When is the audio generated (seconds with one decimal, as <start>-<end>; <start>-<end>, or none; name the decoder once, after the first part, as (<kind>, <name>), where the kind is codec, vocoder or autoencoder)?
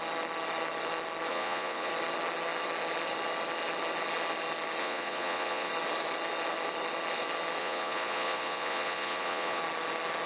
1.3-1.9 (vocoder, Vocos); 4.8-5.7; 7.6-9.6